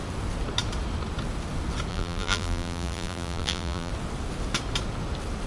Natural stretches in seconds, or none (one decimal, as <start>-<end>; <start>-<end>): 0.0-1.9; 3.9-5.5